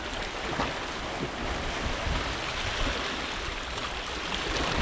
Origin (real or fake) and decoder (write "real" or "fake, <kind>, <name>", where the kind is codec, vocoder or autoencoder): real